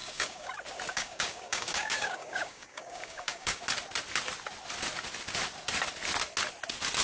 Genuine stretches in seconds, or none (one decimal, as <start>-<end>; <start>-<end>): 0.5-0.9; 3.6-7.0